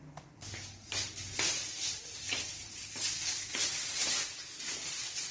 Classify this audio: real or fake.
real